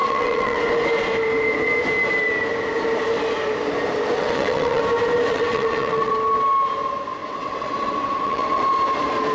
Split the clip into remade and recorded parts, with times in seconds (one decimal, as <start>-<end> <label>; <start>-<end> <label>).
0.0-0.6 remade; 0.6-4.2 recorded; 4.2-4.8 remade; 4.8-5.3 recorded; 5.3-6.1 remade; 6.1-7.2 recorded; 7.2-8.6 remade; 8.6-9.3 recorded